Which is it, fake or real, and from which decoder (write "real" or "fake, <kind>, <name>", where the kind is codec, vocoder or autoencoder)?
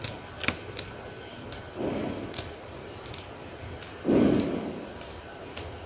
fake, vocoder, BigVGAN v2